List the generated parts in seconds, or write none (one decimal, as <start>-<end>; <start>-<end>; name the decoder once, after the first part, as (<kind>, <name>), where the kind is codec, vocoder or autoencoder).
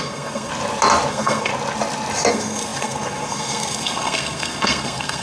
0.0-0.5 (codec, SNAC); 1.1-1.5; 2.3-5.2